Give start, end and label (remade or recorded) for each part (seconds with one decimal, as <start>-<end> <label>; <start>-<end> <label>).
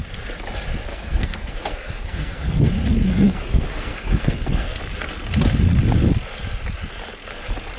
0.0-0.9 recorded; 0.9-2.7 remade; 2.7-3.1 recorded; 3.1-4.8 remade; 4.8-7.8 recorded